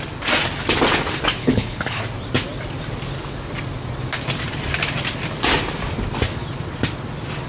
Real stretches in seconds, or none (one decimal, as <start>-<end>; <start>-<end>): 0.0-1.4; 2.0-7.5